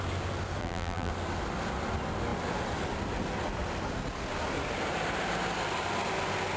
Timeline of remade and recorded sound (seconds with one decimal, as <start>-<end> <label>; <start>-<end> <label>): 0.0-0.6 recorded; 0.6-1.1 remade; 1.1-6.6 recorded